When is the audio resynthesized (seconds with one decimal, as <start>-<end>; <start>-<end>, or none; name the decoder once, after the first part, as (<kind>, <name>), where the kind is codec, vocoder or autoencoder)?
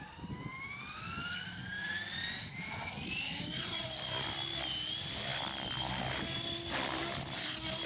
none